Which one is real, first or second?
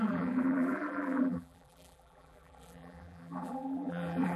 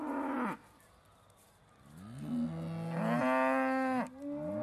second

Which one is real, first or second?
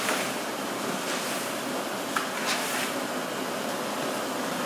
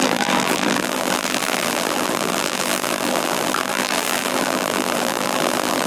first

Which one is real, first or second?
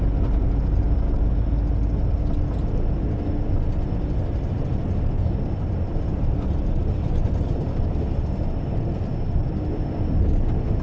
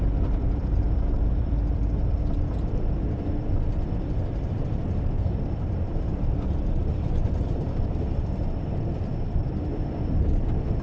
first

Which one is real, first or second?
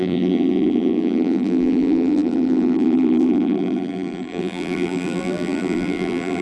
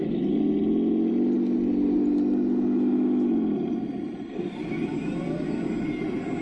second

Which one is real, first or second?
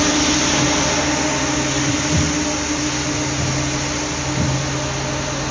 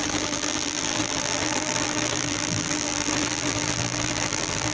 first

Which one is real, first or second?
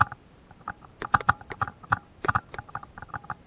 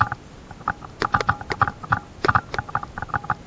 second